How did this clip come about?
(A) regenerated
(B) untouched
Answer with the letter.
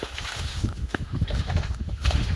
A